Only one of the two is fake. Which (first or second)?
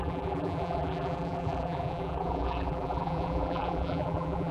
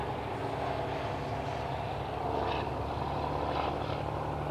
first